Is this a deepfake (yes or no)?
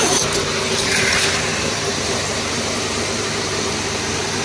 yes